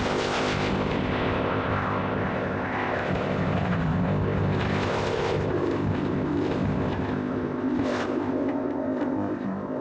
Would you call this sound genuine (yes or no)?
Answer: no